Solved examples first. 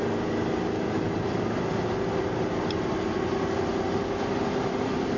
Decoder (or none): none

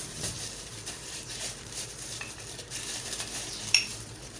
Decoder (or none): vocoder, BigVGAN v2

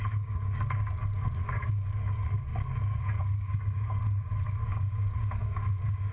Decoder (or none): codec, DAC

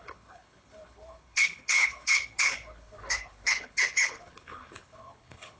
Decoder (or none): codec, HILCodec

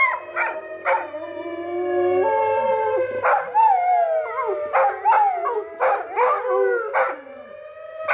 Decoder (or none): none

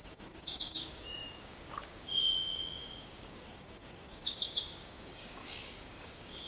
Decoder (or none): codec, DAC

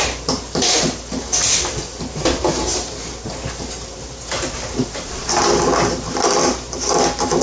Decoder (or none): vocoder, BigVGAN v2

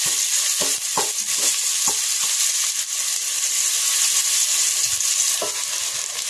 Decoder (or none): none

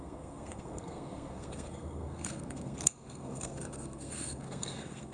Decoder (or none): codec, SNAC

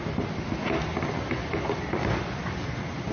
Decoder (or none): none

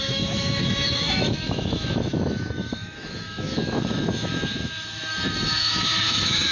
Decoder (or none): autoencoder, DAC-VAE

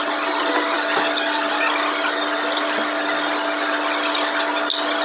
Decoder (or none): none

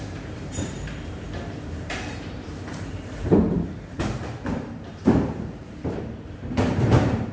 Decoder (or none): vocoder, BigVGAN v2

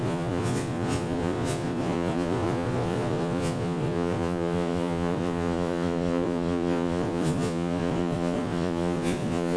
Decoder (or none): vocoder, Vocos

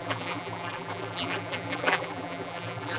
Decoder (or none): vocoder, BigVGAN v2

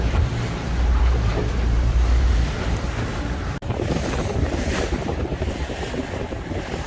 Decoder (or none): vocoder, BigVGAN v2